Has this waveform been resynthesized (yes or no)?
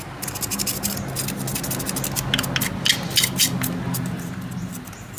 no